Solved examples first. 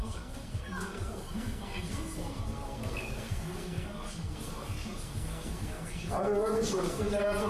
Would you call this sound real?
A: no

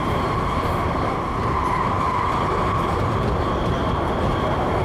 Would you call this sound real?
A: yes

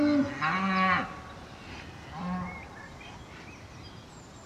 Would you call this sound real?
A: yes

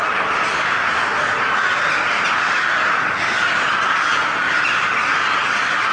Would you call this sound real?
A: yes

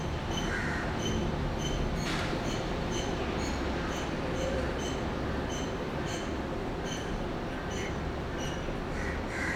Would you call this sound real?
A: yes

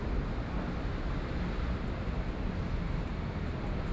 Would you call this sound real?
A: yes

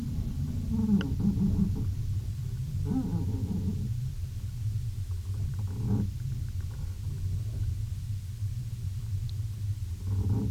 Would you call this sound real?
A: yes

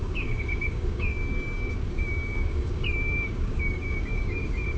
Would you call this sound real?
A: no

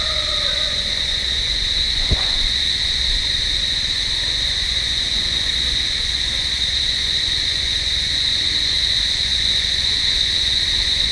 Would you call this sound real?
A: no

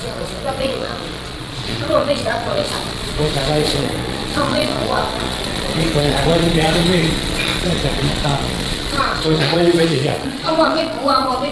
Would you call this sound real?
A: no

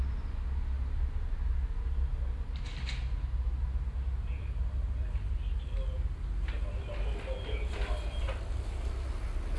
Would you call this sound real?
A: yes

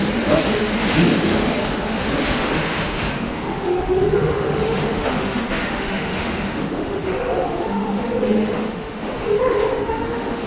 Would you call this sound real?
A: no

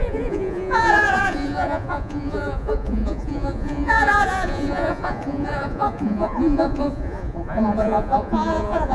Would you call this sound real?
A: no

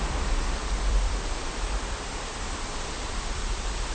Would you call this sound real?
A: no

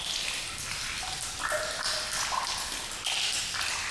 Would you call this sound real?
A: yes